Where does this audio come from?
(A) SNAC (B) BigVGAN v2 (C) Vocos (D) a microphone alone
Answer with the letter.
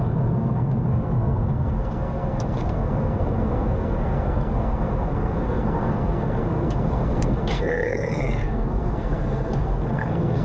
A